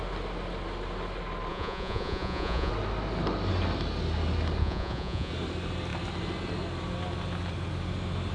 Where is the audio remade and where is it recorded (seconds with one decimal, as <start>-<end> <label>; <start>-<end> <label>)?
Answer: 0.0-1.5 recorded; 1.5-2.7 remade; 2.7-4.6 recorded; 4.6-5.3 remade; 5.3-8.3 recorded